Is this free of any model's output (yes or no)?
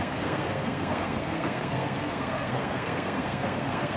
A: no